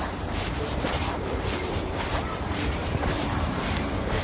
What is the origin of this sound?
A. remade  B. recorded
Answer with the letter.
A